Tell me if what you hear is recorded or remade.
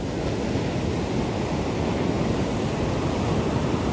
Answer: recorded